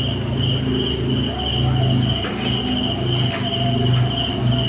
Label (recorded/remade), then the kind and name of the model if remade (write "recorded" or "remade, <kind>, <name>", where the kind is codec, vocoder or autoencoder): recorded